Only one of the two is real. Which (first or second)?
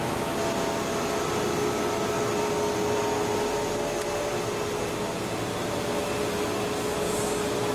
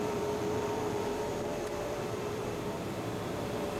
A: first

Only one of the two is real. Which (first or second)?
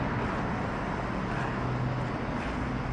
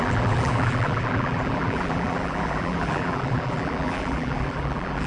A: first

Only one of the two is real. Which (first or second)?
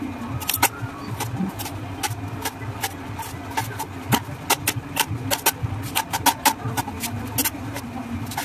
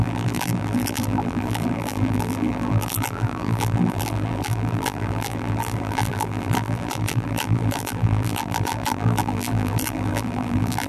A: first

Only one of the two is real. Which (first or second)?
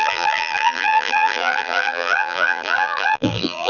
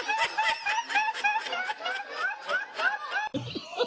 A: second